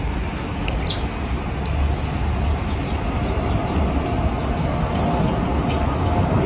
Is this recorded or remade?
recorded